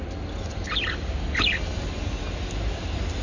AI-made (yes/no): no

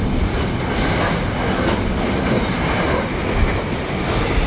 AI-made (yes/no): no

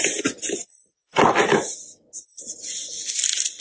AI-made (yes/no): no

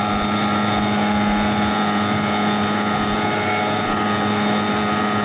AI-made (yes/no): no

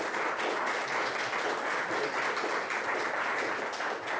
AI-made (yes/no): no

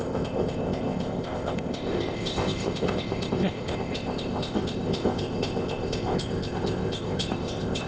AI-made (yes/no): yes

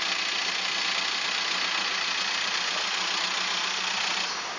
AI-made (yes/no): no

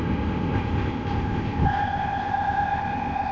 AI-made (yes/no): yes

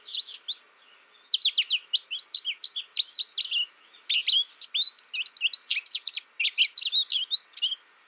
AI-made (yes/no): no